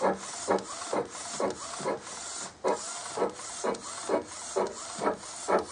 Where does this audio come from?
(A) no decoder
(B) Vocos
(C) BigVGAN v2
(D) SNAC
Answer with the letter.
A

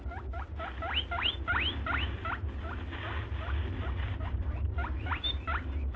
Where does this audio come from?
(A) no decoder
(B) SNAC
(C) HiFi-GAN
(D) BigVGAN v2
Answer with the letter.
A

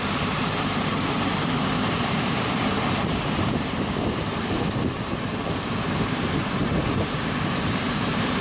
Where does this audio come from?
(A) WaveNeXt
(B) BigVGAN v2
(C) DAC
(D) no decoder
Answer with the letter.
B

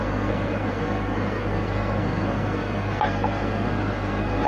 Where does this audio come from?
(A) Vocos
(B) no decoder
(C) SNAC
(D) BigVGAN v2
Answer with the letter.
C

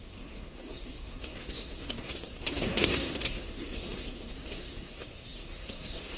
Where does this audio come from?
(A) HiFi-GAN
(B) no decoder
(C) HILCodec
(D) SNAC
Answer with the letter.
D